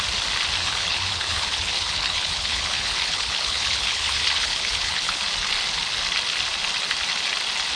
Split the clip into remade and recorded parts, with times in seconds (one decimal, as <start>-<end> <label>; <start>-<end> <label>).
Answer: 0.0-0.6 recorded; 0.6-5.2 remade; 5.2-7.8 recorded